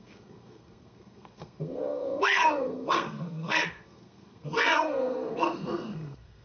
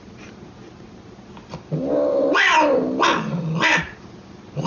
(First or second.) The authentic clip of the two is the second